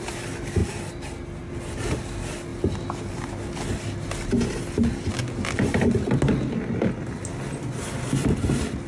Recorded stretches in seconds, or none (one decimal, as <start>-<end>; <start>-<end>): 0.0-8.9